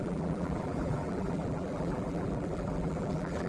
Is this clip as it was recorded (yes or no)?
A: no